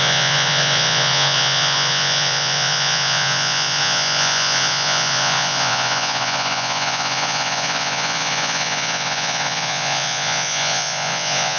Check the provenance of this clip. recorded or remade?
remade